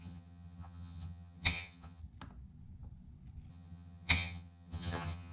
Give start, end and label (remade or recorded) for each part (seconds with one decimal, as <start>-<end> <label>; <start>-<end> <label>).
0.0-2.0 remade; 2.0-3.5 recorded; 3.5-5.3 remade